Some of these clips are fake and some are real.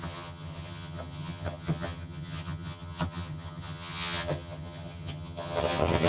fake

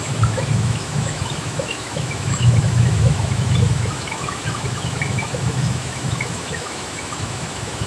fake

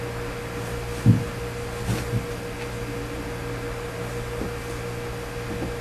real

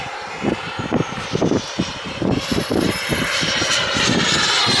fake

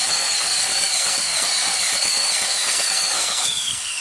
fake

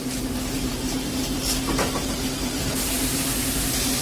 fake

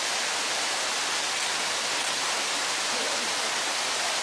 real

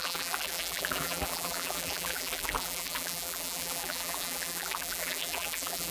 fake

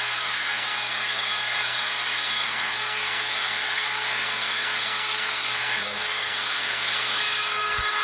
fake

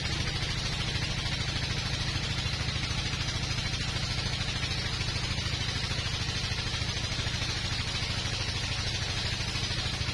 real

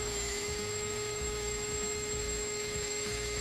fake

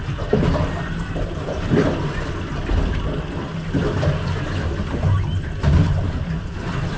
real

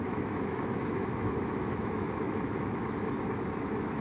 fake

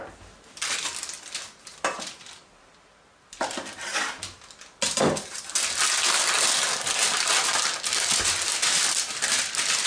real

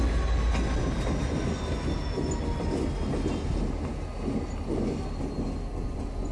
real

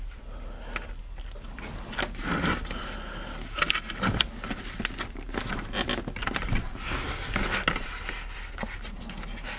real